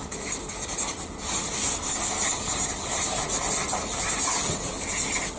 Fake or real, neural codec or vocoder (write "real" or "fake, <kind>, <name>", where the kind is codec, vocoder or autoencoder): real